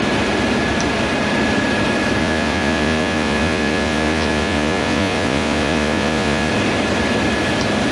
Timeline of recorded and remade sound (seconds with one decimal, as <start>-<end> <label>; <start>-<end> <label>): 0.0-2.2 recorded; 2.2-6.5 remade; 6.5-7.9 recorded